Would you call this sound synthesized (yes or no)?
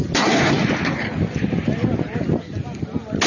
no